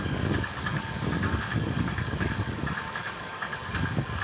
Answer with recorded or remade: remade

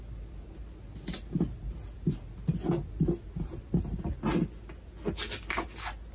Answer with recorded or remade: recorded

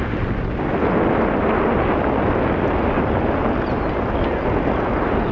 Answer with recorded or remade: recorded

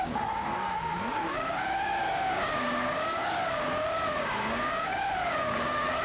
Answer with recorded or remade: remade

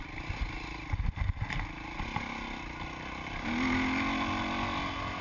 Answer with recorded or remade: recorded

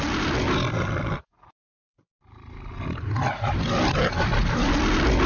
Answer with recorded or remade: recorded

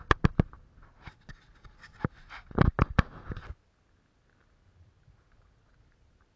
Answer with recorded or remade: recorded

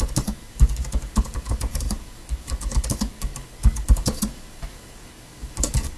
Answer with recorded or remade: remade